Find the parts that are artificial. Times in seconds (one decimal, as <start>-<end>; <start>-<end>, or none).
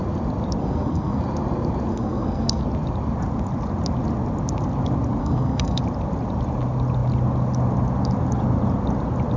0.6-1.2; 1.9-2.6; 5.2-5.8